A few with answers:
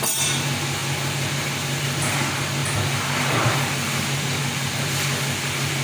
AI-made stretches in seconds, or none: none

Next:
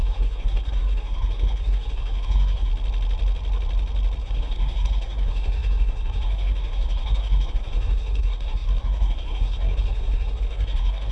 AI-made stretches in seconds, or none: 0.0-2.7 (codec, SNAC); 4.2-11.1

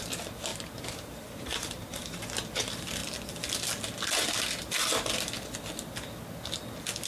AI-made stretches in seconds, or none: 0.5-2.2 (vocoder, BigVGAN v2)

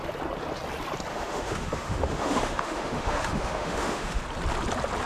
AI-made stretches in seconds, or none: 1.1-4.2 (autoencoder, DAC-VAE)

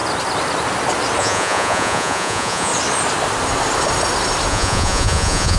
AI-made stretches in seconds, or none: 1.2-2.7 (vocoder, Vocos); 4.5-5.6

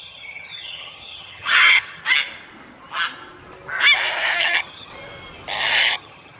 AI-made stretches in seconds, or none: 0.0-2.0 (vocoder, HiFi-GAN); 4.4-4.9; 5.8-6.4